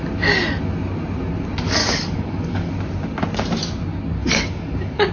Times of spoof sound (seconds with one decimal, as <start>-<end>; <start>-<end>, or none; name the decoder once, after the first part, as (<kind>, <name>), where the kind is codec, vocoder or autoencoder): 1.8-2.7 (codec, DAC); 4.2-5.1